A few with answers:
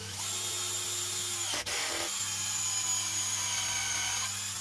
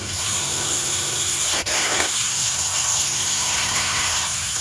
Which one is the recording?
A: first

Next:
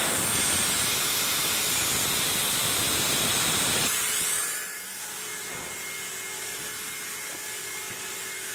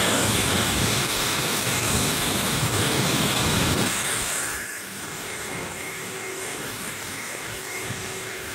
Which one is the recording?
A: first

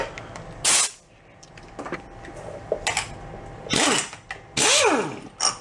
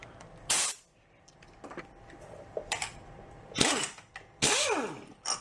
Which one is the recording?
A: first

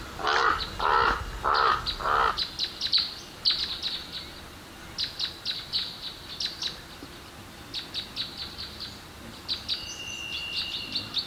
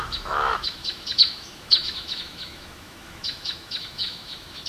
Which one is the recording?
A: first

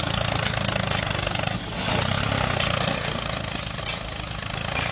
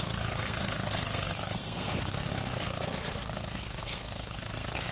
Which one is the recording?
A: first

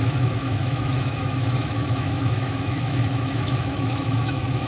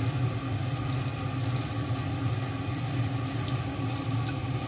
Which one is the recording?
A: second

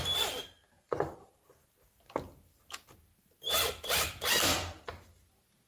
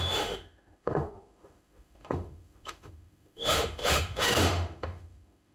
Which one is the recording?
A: first